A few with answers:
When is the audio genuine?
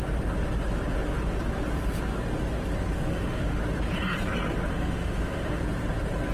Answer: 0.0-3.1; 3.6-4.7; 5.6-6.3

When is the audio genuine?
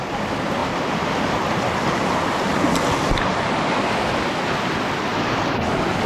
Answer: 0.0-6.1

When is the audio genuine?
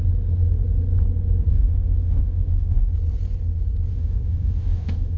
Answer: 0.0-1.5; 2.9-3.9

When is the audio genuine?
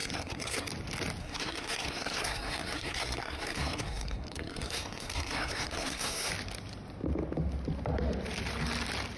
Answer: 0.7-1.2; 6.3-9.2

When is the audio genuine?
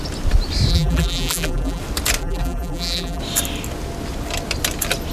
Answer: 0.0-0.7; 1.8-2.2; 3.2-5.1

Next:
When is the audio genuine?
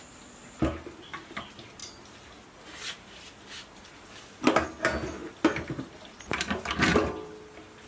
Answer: 0.0-7.9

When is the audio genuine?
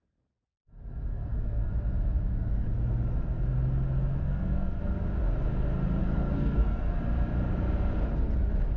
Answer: 0.0-1.1; 1.7-4.2; 4.8-6.0; 7.0-8.8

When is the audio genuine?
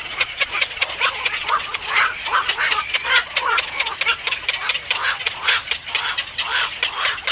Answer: 4.0-5.0; 5.7-7.3